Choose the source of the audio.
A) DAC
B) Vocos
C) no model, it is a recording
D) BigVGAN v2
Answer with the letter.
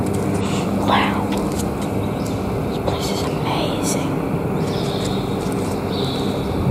C